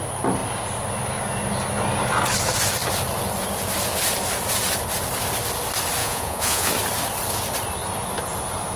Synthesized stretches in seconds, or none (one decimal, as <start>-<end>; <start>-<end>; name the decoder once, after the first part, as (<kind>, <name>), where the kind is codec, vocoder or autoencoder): 6.0-6.7 (vocoder, Vocos)